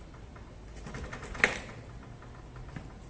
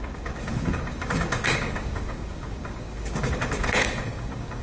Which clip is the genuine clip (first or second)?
first